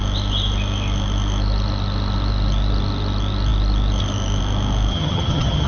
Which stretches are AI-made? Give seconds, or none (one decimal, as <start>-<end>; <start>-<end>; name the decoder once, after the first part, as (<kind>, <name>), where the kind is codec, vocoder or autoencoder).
4.9-5.7 (vocoder, HiFi-GAN)